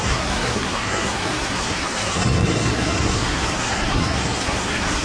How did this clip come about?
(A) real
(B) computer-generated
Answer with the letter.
B